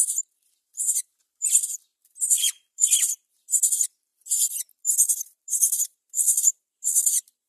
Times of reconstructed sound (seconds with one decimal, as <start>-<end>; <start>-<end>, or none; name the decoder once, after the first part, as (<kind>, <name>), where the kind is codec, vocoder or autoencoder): 0.0-4.1 (vocoder, BigVGAN v2); 4.8-7.5